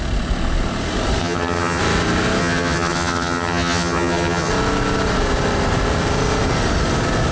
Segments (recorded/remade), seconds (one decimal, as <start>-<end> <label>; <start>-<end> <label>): 0.0-1.2 recorded; 1.2-1.8 remade; 1.8-2.4 recorded; 2.4-4.5 remade; 4.5-7.3 recorded